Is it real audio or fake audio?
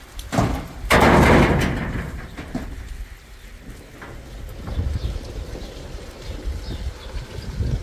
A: real